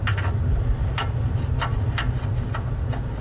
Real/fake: real